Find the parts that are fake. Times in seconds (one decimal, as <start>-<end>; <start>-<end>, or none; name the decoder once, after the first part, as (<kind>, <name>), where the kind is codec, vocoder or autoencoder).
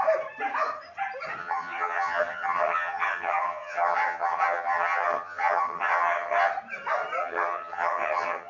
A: 1.4-6.5 (vocoder, HiFi-GAN); 7.2-8.5